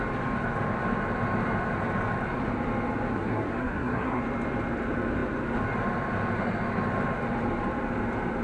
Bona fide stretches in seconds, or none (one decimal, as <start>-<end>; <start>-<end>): 0.0-3.1; 4.2-8.4